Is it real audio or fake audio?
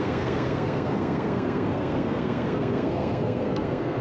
fake